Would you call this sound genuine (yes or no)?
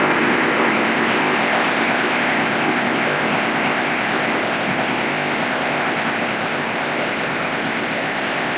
no